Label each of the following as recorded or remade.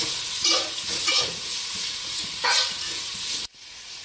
remade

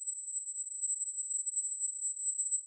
remade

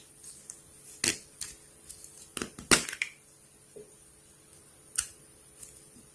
recorded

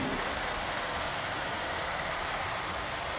recorded